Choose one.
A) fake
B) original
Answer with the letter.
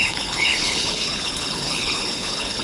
A